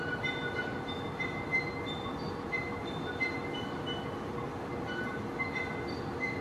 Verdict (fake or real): real